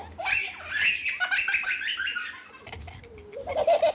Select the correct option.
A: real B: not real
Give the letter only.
A